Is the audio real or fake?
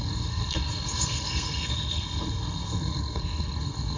fake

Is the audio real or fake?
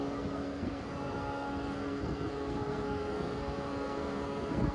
fake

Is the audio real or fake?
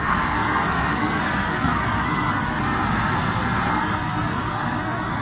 fake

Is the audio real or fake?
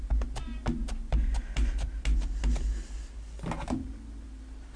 real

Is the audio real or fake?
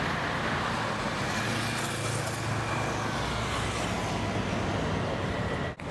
real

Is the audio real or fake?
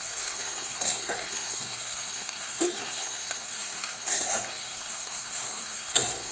fake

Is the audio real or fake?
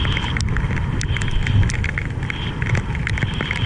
real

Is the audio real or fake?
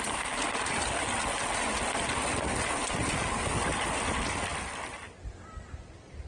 real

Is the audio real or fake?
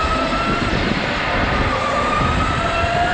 real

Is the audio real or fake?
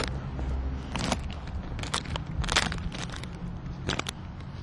real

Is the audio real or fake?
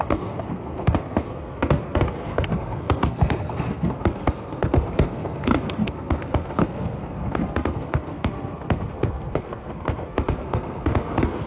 fake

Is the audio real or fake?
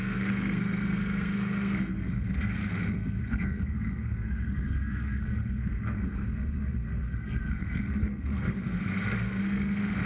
fake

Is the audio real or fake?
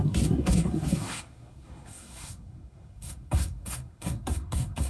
fake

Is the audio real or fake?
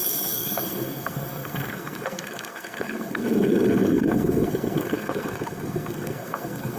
fake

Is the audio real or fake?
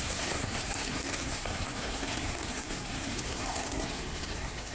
fake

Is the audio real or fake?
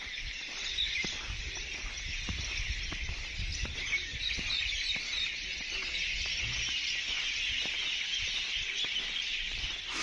real